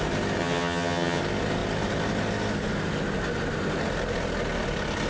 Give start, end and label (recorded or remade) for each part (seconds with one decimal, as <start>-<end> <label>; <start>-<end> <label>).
0.0-0.4 recorded; 0.4-1.2 remade; 1.2-5.1 recorded